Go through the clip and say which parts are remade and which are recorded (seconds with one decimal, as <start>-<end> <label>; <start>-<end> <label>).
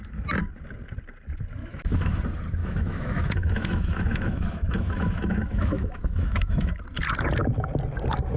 0.0-1.6 recorded; 1.6-2.2 remade; 2.2-2.6 recorded; 2.6-6.7 remade; 6.7-8.4 recorded